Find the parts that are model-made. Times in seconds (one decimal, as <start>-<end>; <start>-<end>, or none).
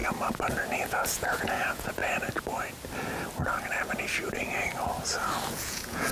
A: 0.8-2.0; 5.5-6.1